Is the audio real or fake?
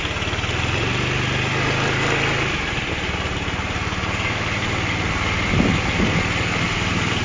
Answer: real